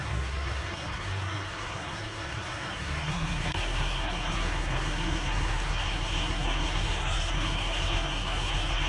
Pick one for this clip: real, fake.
fake